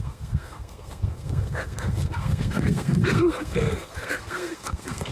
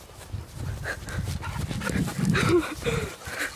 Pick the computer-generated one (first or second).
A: first